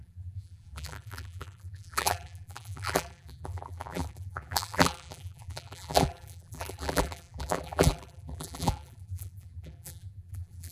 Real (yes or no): no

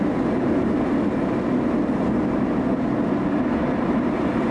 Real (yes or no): yes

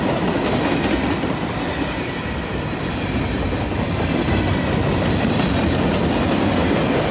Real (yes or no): yes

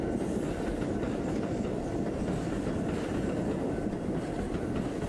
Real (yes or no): no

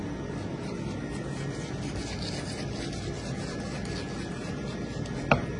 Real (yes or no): yes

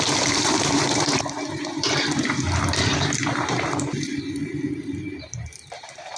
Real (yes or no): no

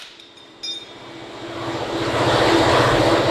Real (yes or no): no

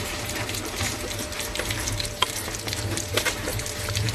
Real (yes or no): no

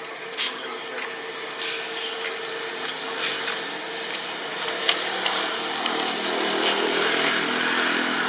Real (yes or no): yes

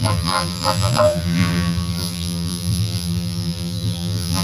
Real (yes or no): no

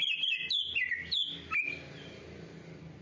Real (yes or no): yes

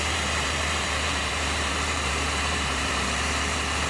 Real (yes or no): no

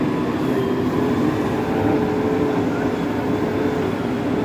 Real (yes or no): yes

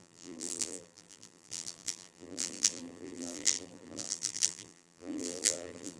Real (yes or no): no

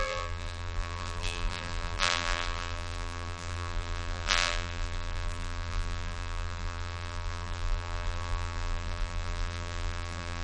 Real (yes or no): no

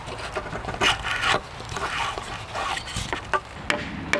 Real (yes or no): yes